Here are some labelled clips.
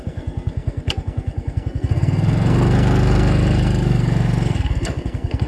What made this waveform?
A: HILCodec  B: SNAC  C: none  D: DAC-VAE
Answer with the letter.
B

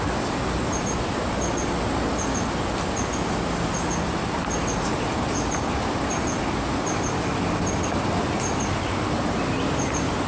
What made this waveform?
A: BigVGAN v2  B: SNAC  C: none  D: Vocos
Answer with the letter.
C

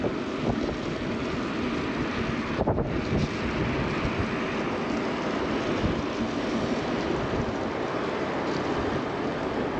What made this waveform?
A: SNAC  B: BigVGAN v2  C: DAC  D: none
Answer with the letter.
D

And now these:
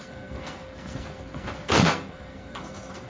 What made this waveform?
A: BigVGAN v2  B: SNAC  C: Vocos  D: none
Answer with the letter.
B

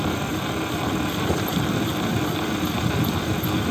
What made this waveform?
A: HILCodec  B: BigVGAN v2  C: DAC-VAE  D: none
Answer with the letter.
D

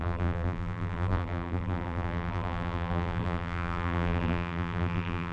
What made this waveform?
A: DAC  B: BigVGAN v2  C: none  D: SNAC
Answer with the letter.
B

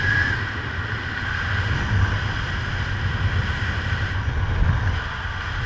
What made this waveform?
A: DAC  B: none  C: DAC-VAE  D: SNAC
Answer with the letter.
B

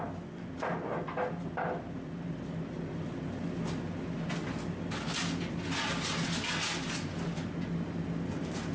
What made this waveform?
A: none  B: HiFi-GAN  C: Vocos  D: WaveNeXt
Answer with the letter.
A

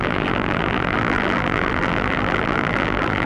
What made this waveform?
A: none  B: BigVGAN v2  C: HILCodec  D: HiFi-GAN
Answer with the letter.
B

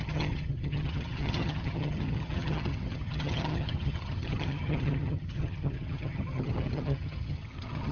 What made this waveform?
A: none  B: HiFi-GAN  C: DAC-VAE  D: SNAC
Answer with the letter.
B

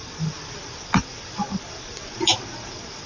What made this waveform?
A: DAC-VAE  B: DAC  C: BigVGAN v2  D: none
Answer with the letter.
D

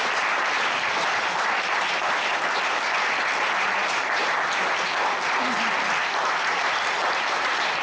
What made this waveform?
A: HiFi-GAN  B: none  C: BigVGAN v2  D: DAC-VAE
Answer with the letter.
B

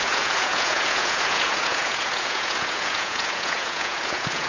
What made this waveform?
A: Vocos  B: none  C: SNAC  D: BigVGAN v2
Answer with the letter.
A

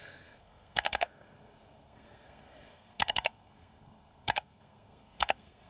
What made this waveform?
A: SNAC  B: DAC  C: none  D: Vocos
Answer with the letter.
A